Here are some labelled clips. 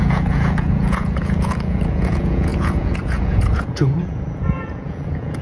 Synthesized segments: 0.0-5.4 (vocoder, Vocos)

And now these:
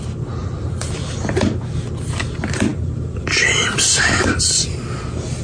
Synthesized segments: 0.4-1.6 (vocoder, BigVGAN v2); 2.7-4.8

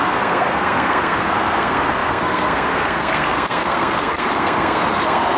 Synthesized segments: 0.0-5.4 (codec, SNAC)

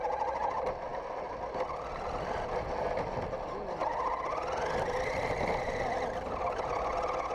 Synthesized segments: none

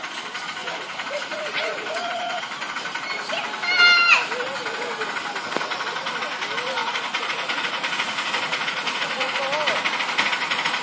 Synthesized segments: 0.6-2.4 (vocoder, Vocos); 6.8-9.4

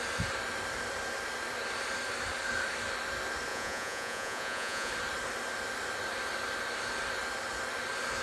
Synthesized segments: 3.5-4.9 (vocoder, Vocos)

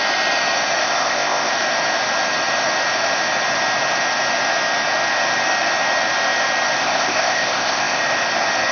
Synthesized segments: 0.8-1.5 (codec, ZipCodec); 6.8-8.0